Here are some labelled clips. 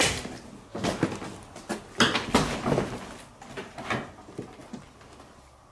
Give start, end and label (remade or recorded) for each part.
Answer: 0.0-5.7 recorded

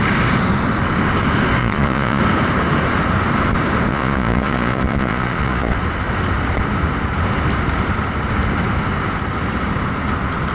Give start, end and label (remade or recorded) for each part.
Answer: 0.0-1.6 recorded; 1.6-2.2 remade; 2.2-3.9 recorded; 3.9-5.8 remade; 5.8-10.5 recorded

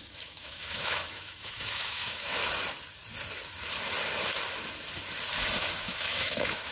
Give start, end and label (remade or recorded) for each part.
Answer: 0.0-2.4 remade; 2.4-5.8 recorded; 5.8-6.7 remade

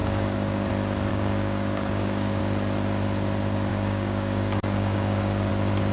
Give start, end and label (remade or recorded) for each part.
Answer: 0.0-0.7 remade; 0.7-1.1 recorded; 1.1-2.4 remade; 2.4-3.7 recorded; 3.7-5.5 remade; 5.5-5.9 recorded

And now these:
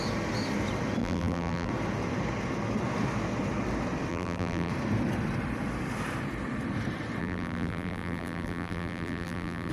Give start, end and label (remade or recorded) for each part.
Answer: 0.0-1.0 recorded; 1.0-1.7 remade; 1.7-4.1 recorded; 4.1-4.7 remade; 4.7-7.2 recorded; 7.2-9.7 remade

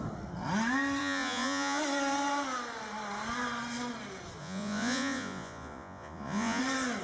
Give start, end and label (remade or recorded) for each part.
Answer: 0.0-1.0 recorded; 1.0-1.8 remade; 1.8-4.4 recorded; 4.4-6.6 remade; 6.6-7.0 recorded

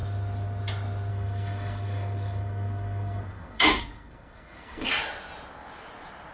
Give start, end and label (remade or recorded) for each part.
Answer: 0.0-1.1 recorded; 1.1-4.9 remade; 4.9-6.3 recorded